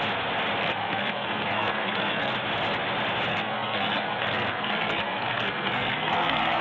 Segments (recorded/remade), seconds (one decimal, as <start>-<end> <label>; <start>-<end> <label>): 0.0-0.6 recorded; 0.6-2.3 remade; 2.3-3.3 recorded; 3.3-6.6 remade